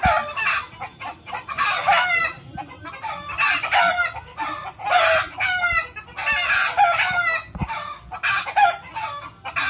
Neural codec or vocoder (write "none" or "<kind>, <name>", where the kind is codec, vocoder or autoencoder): none